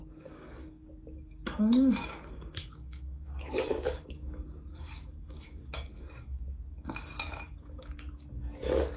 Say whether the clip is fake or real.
fake